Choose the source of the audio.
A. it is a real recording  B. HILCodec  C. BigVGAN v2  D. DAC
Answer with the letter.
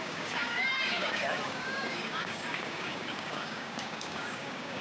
D